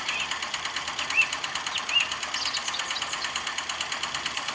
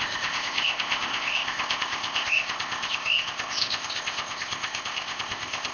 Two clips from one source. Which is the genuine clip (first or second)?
first